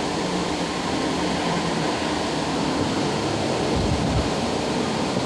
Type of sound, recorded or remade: remade